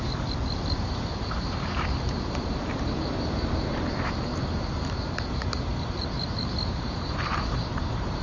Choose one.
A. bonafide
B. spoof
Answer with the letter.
B